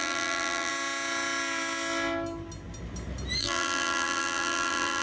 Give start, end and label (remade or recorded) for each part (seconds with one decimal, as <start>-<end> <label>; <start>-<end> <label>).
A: 0.0-0.7 remade; 0.7-3.4 recorded; 3.4-5.0 remade